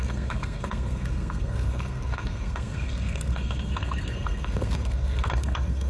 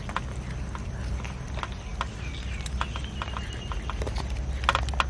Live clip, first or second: second